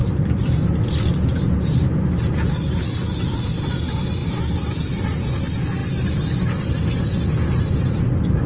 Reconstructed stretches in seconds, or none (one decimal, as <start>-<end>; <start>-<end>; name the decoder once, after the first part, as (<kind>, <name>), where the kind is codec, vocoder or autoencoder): none

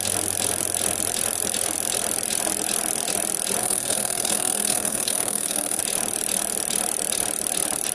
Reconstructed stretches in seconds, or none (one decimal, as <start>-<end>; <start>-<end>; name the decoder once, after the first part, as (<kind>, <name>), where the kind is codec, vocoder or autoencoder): 3.6-5.8 (codec, SNAC)